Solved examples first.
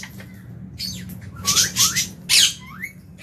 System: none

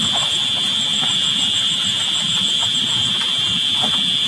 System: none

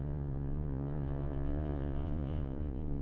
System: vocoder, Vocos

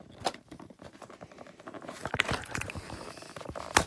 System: vocoder, BigVGAN v2